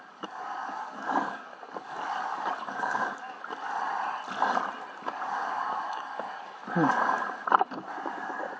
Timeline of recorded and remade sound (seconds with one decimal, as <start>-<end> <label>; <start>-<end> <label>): 0.0-3.4 remade; 3.4-5.0 recorded; 5.0-6.6 remade; 6.6-7.5 recorded; 7.5-8.6 remade